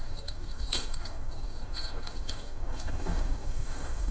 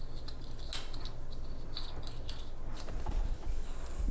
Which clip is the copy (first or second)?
first